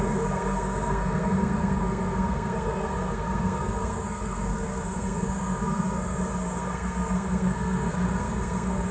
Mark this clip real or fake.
fake